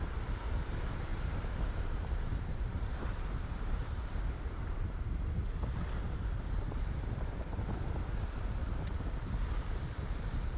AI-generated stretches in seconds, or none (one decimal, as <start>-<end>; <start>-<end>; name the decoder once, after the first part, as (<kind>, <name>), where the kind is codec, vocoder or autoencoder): 1.1-5.0 (vocoder, BigVGAN v2)

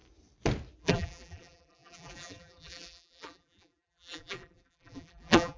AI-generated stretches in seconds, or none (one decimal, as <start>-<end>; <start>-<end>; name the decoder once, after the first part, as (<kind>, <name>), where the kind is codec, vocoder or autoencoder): 0.8-5.6 (vocoder, BigVGAN v2)

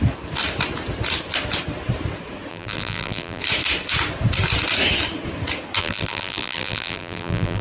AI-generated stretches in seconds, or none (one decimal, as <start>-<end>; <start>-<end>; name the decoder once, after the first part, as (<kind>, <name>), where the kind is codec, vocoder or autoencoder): 2.5-3.4 (vocoder, BigVGAN v2); 5.8-7.6

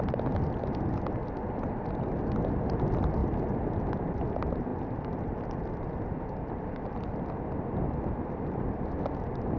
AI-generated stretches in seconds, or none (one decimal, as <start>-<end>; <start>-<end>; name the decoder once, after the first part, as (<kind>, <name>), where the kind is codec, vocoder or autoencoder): 3.2-4.0 (vocoder, BigVGAN v2); 4.7-8.8

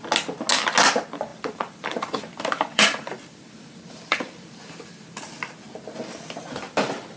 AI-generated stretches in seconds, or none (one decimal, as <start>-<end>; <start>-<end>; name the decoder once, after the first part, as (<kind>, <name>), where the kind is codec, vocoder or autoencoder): 1.3-5.3 (vocoder, BigVGAN v2)

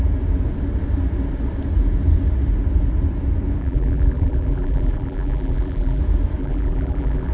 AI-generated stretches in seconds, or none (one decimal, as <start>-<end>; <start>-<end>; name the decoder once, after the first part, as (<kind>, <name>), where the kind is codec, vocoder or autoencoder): 3.6-6.0 (vocoder, BigVGAN v2); 6.4-7.3